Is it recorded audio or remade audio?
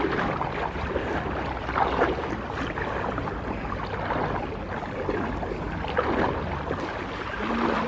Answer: recorded